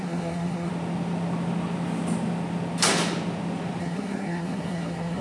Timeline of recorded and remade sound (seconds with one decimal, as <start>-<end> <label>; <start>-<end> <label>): 0.0-0.7 remade; 0.7-3.8 recorded; 3.8-5.2 remade